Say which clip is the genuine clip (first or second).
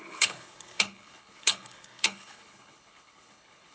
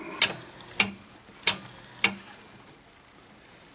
second